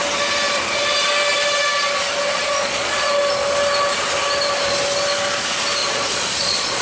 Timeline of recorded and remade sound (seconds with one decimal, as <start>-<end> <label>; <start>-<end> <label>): 0.0-2.3 recorded; 2.3-3.1 remade; 3.1-5.8 recorded; 5.8-6.8 remade